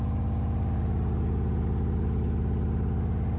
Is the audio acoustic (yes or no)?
yes